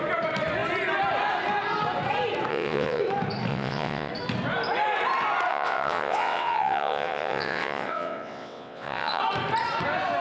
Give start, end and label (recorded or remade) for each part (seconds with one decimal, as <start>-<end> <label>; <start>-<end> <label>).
0.0-2.5 recorded; 2.5-3.0 remade; 3.0-3.5 recorded; 3.5-4.1 remade; 4.1-5.5 recorded; 5.5-9.2 remade; 9.2-10.2 recorded